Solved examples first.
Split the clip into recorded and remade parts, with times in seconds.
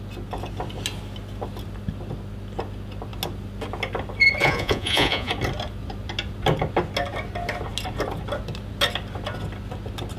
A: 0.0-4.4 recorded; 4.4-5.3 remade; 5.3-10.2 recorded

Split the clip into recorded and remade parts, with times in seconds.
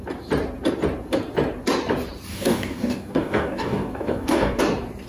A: 0.0-2.3 recorded; 2.3-4.6 remade; 4.6-5.1 recorded